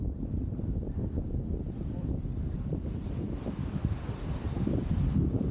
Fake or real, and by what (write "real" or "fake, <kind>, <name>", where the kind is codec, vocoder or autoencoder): fake, vocoder, BigVGAN v2